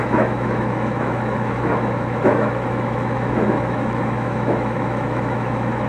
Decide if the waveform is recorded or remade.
remade